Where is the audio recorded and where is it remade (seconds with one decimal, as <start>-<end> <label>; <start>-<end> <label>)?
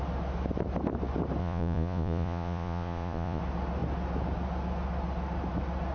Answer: 0.0-1.4 recorded; 1.4-3.4 remade; 3.4-5.9 recorded